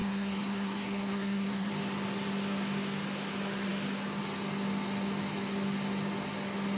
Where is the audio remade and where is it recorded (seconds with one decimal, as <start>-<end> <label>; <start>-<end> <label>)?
0.0-1.7 remade; 1.7-6.8 recorded

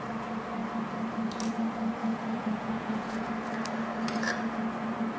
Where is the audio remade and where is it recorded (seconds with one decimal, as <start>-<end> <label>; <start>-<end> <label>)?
0.0-2.0 recorded; 2.0-3.3 remade; 3.3-5.2 recorded

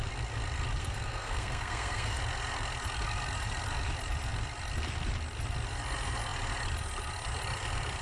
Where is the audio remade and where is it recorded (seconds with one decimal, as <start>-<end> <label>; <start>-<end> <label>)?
0.0-0.8 recorded; 0.8-2.2 remade; 2.2-8.0 recorded

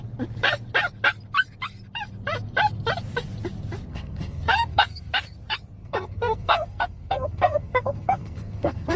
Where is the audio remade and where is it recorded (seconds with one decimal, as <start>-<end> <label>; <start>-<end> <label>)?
0.0-3.9 recorded; 3.9-5.1 remade; 5.1-5.8 recorded; 5.8-9.0 remade

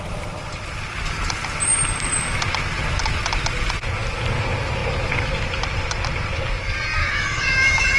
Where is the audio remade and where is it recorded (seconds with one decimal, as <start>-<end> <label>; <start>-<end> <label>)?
0.0-7.0 recorded; 7.0-8.0 remade

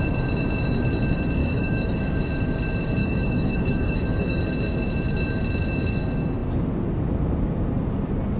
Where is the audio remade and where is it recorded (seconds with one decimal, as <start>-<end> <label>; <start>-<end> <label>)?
0.0-1.4 recorded; 1.4-2.1 remade; 2.1-3.0 recorded; 3.0-4.4 remade; 4.4-8.4 recorded